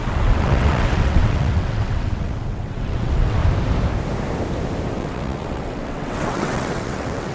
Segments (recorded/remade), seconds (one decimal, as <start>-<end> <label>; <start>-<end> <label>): 0.0-3.4 remade; 3.4-4.9 recorded; 4.9-7.3 remade

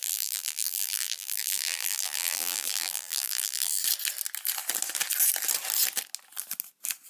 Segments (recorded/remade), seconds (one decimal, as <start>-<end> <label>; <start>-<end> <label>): 0.0-3.8 remade; 3.8-7.1 recorded

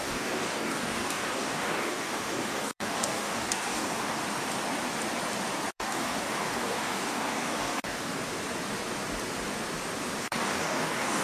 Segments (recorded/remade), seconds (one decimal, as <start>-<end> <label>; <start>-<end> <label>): 0.0-4.2 remade; 4.2-5.7 recorded; 5.7-8.2 remade; 8.2-10.2 recorded; 10.2-11.2 remade

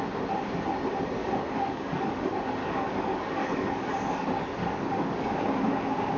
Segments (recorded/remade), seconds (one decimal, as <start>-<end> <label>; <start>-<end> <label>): 0.0-1.2 recorded; 1.2-2.1 remade; 2.1-2.6 recorded; 2.6-3.9 remade; 3.9-4.6 recorded; 4.6-5.4 remade; 5.4-6.2 recorded